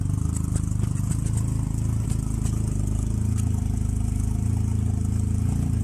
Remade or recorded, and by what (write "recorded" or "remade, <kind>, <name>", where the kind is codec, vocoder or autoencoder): recorded